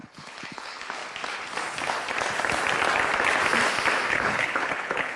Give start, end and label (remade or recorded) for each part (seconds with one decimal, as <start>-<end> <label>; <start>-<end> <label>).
0.0-1.0 remade; 1.0-4.1 recorded; 4.1-5.2 remade